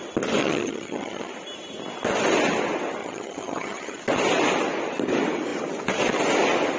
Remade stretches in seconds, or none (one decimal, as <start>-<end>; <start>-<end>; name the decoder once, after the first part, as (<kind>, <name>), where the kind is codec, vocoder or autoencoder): 0.4-1.3 (vocoder, HiFi-GAN); 3.0-4.0